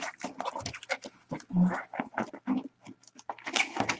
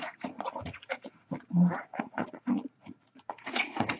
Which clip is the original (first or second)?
first